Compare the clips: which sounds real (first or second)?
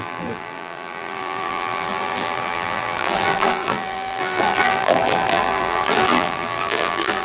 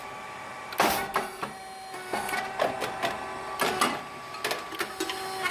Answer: second